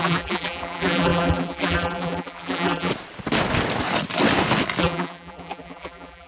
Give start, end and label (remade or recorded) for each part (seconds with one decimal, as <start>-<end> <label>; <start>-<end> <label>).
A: 0.0-2.9 remade; 2.9-4.8 recorded; 4.8-6.3 remade